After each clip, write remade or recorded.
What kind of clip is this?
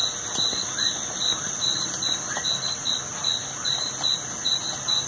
recorded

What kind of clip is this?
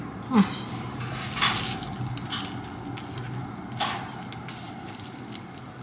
recorded